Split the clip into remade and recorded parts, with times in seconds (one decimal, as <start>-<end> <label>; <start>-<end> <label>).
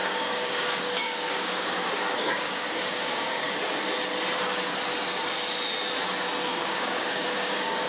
0.0-3.5 remade; 3.5-6.5 recorded; 6.5-7.9 remade